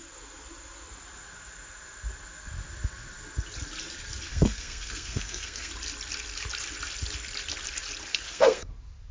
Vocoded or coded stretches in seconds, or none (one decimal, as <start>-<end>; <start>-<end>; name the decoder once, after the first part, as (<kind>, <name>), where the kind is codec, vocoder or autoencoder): 4.3-5.7 (codec, SNAC); 8.1-8.7